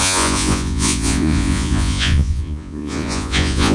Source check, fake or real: fake